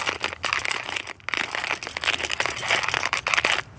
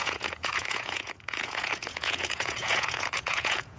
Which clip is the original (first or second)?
first